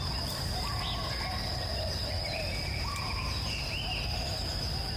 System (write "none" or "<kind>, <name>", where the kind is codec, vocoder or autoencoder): none